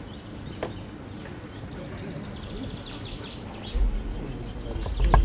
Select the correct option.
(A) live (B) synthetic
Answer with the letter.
A